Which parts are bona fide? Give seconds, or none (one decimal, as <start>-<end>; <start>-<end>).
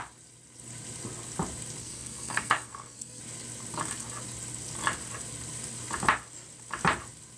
0.0-1.8; 3.2-7.4